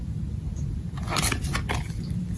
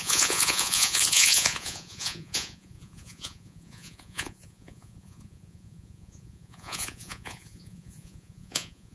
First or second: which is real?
first